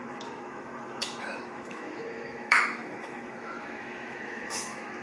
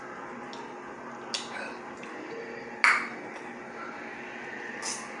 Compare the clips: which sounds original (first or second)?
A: second